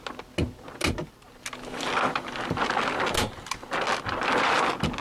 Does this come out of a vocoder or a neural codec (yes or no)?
no